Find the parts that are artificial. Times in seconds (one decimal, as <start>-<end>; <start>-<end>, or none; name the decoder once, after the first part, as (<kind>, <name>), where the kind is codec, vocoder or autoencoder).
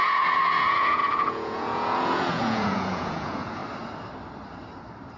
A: 0.0-3.6 (vocoder, Vocos)